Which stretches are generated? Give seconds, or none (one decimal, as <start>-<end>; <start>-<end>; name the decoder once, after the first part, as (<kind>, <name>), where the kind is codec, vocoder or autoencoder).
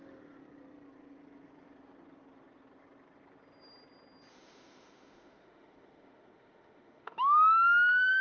4.3-8.2 (autoencoder, DAC-VAE)